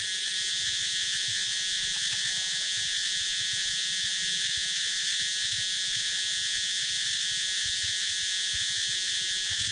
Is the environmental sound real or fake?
fake